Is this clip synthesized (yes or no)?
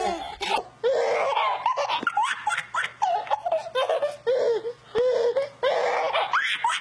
no